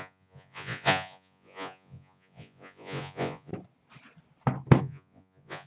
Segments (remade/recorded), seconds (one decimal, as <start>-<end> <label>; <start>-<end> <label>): 0.0-3.5 remade; 3.5-4.8 recorded; 4.8-5.7 remade